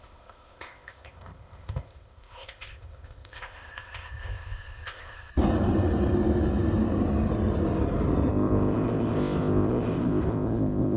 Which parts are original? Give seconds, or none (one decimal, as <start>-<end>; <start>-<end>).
5.3-8.3